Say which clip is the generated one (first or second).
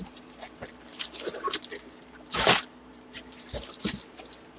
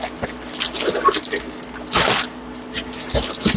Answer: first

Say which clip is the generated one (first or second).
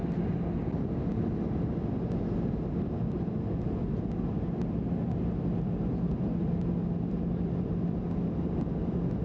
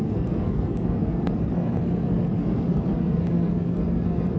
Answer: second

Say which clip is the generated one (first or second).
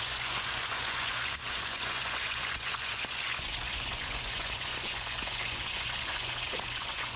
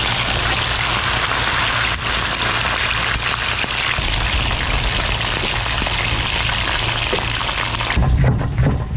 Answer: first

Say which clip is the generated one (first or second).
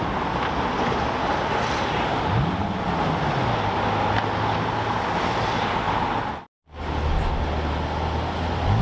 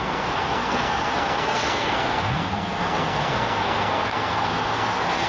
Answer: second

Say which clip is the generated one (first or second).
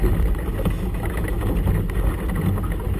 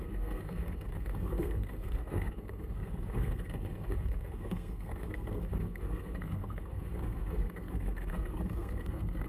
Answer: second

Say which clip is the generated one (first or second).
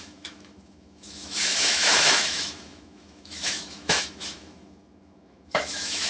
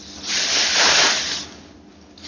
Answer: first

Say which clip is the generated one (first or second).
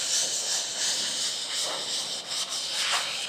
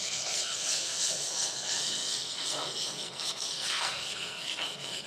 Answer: second